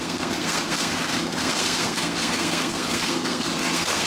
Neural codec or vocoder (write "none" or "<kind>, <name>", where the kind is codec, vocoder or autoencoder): codec, SNAC